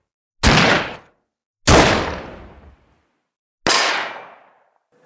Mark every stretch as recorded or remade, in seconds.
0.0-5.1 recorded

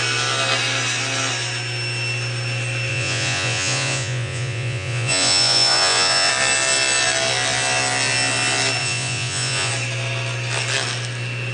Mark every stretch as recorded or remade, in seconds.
0.0-2.9 recorded; 2.9-6.3 remade; 6.3-8.8 recorded; 8.8-9.7 remade; 9.7-11.5 recorded

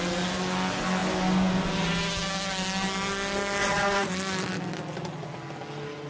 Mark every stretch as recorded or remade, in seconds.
0.0-3.6 recorded; 3.6-4.1 remade; 4.1-6.1 recorded

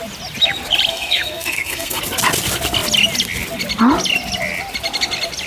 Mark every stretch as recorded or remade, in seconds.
0.0-0.9 recorded; 0.9-2.0 remade; 2.0-5.5 recorded

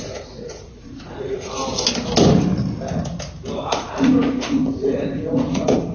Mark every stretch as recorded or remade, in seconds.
0.0-1.6 remade; 1.6-3.6 recorded; 3.6-5.9 remade

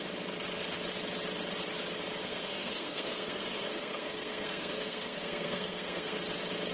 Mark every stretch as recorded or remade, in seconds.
0.0-2.2 recorded; 2.2-6.2 remade; 6.2-6.7 recorded

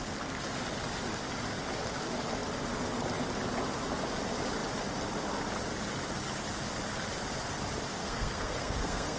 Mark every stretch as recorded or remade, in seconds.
0.0-8.0 recorded; 8.0-9.2 remade